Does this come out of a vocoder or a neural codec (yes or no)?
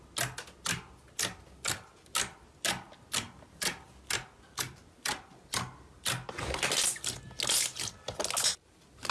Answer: no